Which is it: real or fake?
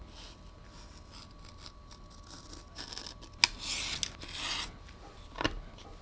real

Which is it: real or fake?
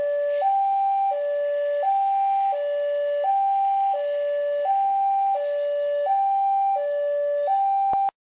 real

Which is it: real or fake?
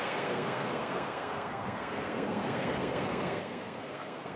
fake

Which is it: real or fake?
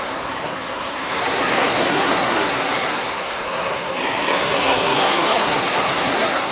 fake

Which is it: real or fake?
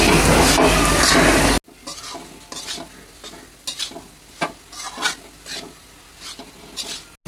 real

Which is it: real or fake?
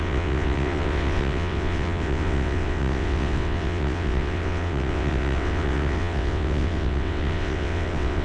fake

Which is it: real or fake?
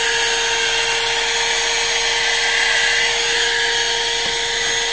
real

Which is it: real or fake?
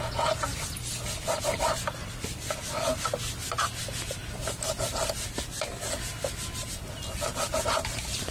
real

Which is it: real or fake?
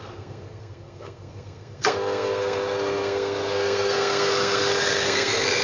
fake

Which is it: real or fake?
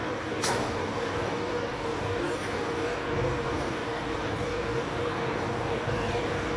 fake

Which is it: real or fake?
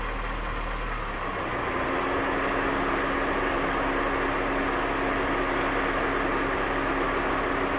real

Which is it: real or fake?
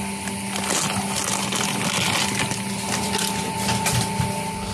real